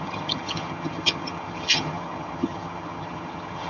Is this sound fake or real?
fake